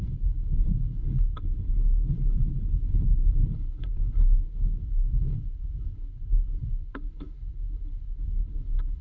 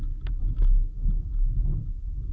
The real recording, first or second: second